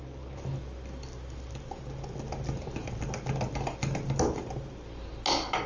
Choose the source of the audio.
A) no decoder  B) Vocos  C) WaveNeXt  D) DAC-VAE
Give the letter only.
A